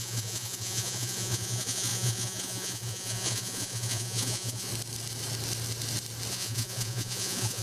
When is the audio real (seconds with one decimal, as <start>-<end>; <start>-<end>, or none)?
4.7-6.3